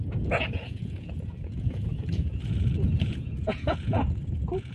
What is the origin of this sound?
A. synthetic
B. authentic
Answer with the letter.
A